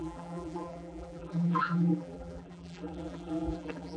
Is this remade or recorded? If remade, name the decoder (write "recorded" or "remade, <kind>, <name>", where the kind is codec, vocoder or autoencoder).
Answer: remade, vocoder, BigVGAN v2